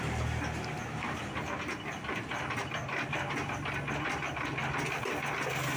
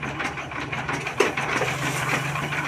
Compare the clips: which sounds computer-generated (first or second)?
second